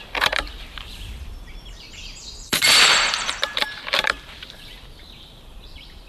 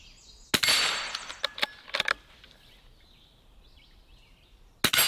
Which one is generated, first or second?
first